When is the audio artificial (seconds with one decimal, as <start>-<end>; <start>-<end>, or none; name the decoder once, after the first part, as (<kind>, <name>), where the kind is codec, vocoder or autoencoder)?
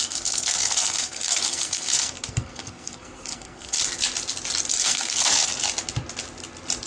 0.0-3.8 (codec, SNAC); 4.7-5.5